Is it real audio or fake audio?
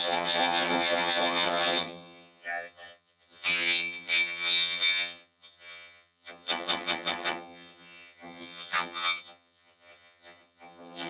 fake